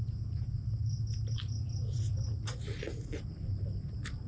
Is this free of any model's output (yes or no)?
yes